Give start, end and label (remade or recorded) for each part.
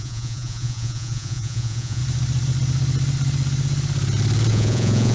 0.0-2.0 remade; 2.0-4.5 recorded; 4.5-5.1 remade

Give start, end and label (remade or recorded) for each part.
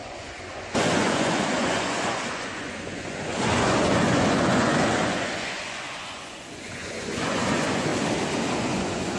0.0-7.9 remade; 7.9-8.6 recorded; 8.6-9.2 remade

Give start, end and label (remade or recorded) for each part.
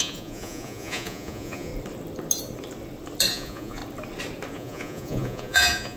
0.0-1.7 remade; 1.7-3.3 recorded; 3.3-3.8 remade; 3.8-4.5 recorded; 4.5-6.0 remade